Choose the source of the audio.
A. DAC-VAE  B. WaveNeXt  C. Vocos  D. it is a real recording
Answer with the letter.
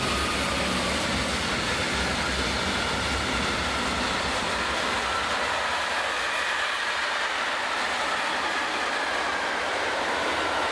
D